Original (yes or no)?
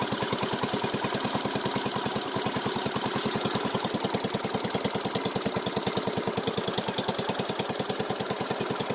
yes